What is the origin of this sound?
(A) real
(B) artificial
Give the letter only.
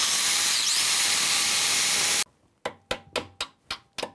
A